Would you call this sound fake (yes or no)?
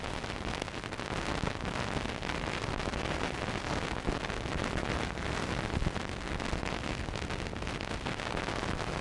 no